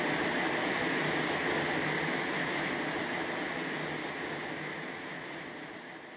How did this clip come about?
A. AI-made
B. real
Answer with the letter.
B